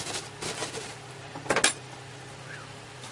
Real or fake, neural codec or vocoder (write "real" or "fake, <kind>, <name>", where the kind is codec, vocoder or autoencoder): real